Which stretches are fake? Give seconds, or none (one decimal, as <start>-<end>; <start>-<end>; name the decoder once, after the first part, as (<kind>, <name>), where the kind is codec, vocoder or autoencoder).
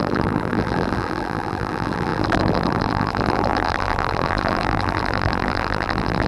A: 0.0-6.3 (vocoder, BigVGAN v2)